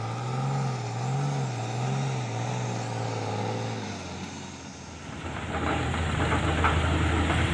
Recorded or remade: recorded